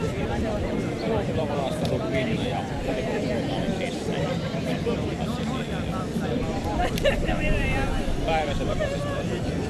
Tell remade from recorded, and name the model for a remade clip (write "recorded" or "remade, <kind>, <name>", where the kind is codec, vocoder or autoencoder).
remade, vocoder, BigVGAN v2